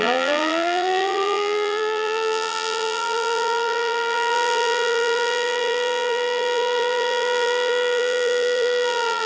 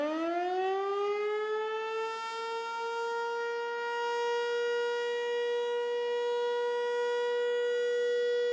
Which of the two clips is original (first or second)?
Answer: second